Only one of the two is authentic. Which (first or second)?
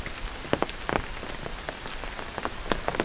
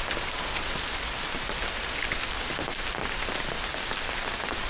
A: second